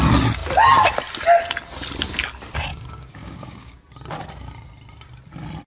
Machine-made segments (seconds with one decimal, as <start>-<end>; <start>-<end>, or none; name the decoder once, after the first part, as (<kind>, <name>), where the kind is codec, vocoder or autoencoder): 2.7-3.8 (codec, DAC)